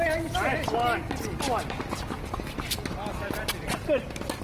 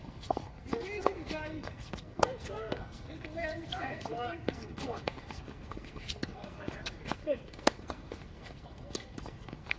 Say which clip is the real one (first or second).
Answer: first